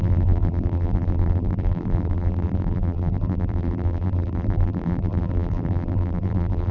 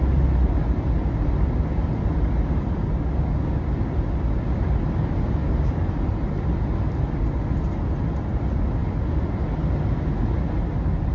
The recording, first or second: second